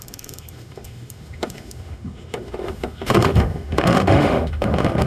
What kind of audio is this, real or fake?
fake